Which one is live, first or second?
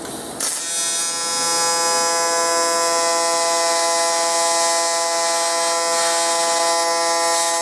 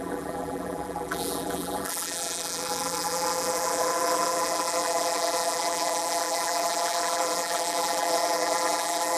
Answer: first